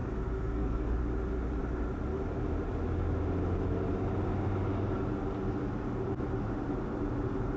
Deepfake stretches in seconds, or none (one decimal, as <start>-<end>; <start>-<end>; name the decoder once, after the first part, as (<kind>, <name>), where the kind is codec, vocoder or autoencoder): 0.0-1.0 (codec, SNAC)